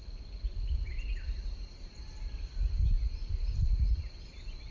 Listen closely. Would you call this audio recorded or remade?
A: recorded